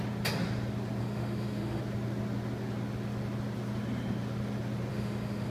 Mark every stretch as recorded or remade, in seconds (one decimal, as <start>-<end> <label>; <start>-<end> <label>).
0.0-1.0 recorded; 1.0-1.8 remade; 1.8-4.9 recorded; 4.9-5.5 remade